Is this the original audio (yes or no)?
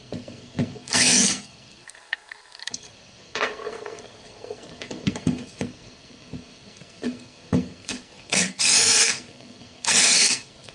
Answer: no